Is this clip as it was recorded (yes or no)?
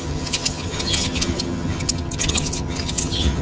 no